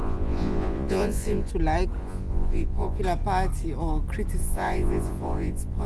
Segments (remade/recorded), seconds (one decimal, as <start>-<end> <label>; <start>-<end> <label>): 0.0-1.5 remade; 1.5-2.0 recorded; 2.0-3.0 remade; 3.0-4.4 recorded; 4.4-5.9 remade